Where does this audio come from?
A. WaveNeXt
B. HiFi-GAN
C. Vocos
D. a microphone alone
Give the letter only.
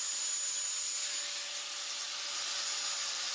D